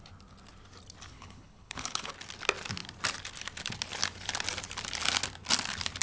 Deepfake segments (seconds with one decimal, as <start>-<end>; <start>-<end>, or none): 1.1-2.1